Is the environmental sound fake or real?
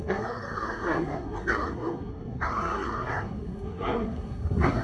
fake